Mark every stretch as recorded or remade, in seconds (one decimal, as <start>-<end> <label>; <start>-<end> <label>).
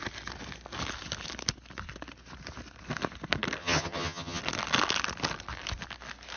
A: 0.0-3.6 recorded; 3.6-4.4 remade; 4.4-6.4 recorded